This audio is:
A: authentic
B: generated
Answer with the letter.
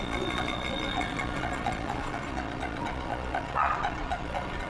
B